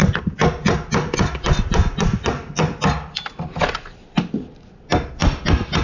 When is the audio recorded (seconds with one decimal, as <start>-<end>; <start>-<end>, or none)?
0.0-5.8